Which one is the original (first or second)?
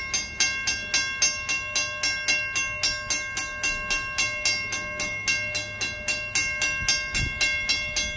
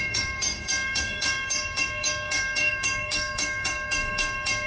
first